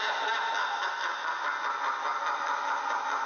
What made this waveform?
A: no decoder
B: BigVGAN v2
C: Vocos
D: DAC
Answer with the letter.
A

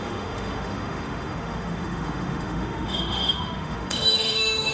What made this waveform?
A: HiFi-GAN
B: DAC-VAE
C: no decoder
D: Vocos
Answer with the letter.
B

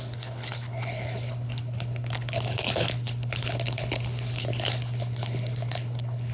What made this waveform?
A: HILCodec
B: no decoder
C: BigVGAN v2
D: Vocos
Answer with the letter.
A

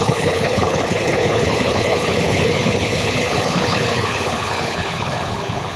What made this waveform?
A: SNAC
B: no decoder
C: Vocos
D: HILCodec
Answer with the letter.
D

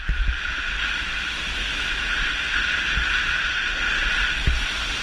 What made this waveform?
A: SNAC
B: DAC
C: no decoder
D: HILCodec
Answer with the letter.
C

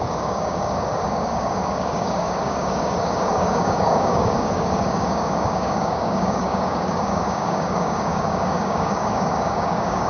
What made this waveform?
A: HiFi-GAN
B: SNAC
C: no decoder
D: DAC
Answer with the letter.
D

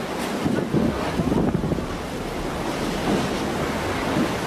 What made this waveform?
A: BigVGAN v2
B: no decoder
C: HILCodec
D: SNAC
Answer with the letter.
B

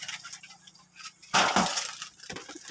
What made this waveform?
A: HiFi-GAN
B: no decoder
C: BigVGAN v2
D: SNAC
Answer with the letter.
B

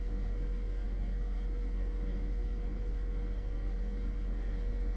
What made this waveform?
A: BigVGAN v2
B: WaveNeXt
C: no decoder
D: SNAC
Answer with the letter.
D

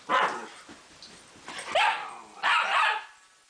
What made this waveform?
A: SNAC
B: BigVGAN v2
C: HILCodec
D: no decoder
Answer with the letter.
D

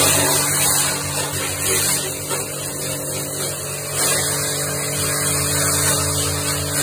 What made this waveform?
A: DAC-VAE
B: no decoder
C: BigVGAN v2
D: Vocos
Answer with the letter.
B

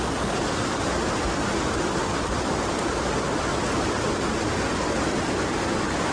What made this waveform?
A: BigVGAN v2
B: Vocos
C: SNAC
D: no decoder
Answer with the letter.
D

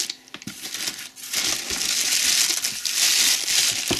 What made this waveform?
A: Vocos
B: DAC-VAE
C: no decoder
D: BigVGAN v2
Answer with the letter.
C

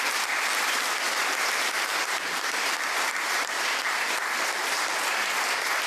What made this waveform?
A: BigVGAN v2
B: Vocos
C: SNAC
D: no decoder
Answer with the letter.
A